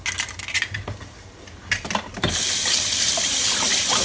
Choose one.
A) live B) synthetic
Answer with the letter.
A